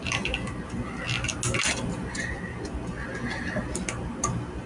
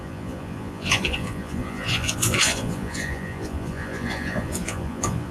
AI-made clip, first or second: second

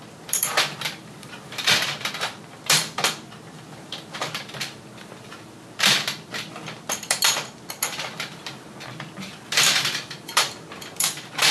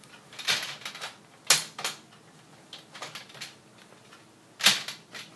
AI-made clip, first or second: first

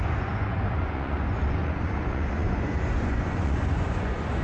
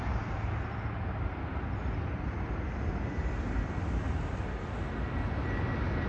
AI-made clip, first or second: first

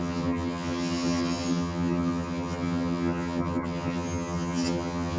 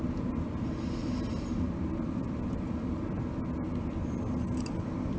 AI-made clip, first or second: first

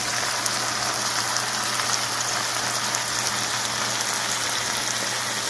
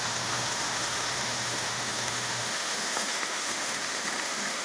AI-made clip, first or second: second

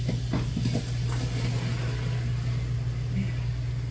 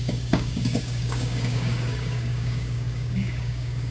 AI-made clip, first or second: second